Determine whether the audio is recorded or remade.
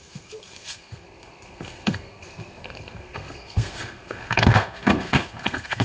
remade